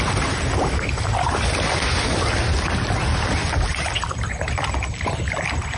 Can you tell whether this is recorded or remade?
recorded